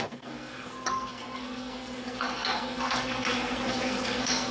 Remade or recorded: remade